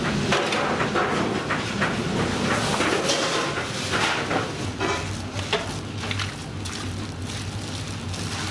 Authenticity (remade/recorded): recorded